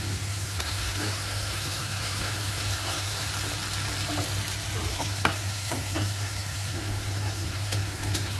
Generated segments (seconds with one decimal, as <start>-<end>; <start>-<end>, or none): 0.0-3.3; 4.9-8.4